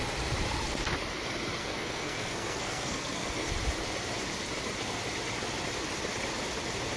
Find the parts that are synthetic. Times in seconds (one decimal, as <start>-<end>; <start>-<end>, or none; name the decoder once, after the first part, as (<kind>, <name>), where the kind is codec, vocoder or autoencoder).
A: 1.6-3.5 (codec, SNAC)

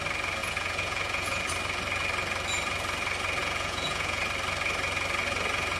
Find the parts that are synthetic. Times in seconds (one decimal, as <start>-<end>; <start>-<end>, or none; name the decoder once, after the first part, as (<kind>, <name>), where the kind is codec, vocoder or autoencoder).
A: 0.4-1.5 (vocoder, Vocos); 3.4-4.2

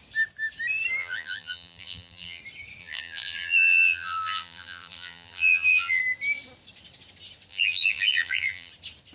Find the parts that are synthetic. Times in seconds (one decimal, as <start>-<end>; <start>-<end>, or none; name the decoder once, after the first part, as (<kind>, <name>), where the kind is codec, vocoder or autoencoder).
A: 1.0-2.4 (vocoder, BigVGAN v2); 2.8-6.0; 7.5-8.7

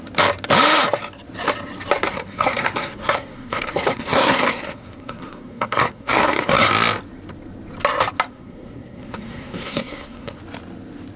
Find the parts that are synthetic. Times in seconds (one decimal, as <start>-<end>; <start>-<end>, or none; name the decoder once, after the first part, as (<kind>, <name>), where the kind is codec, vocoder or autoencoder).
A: 2.1-6.7 (codec, SNAC); 8.3-10.4